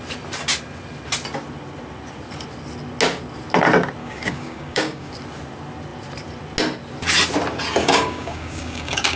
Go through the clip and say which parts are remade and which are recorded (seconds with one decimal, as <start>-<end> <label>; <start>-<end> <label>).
0.0-4.0 recorded; 4.0-5.1 remade; 5.1-7.8 recorded; 7.8-9.2 remade